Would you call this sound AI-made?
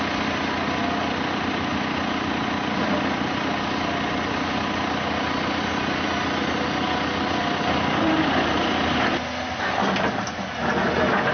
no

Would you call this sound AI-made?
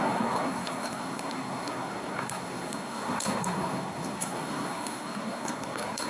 yes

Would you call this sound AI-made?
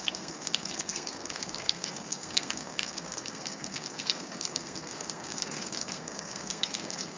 yes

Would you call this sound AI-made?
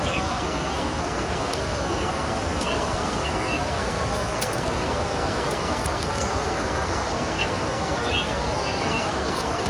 yes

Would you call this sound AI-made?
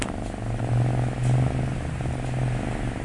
no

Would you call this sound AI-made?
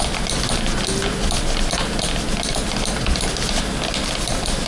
no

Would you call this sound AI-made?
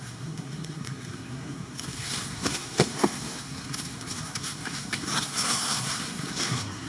yes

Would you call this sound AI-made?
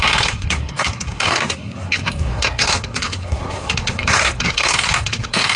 yes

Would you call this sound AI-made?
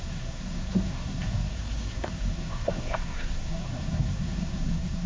yes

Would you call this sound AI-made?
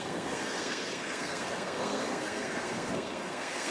yes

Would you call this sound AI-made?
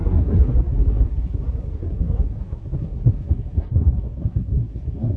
yes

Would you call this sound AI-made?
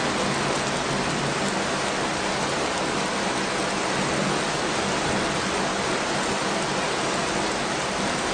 no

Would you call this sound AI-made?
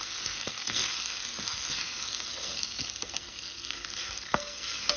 yes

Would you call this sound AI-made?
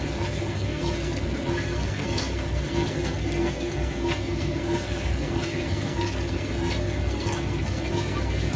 yes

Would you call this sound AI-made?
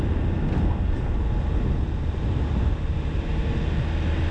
no